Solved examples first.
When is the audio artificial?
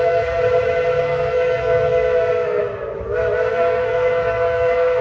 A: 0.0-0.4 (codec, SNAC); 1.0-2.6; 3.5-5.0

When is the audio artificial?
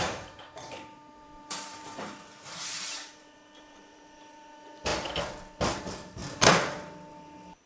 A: 0.0-4.9 (vocoder, BigVGAN v2); 5.8-6.2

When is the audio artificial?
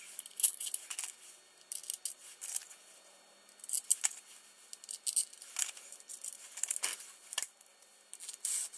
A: none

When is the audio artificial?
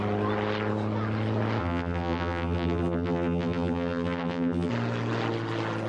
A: 1.6-4.7 (vocoder, BigVGAN v2)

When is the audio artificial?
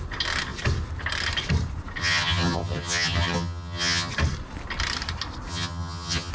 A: 2.0-4.1 (vocoder, HiFi-GAN); 5.5-6.3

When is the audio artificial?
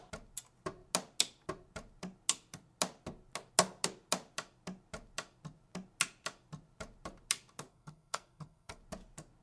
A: 7.7-8.8 (codec, SNAC)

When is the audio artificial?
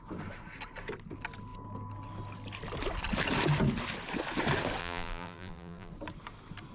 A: 4.8-5.9 (vocoder, BigVGAN v2)